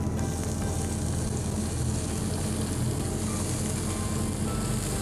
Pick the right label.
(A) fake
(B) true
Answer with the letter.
B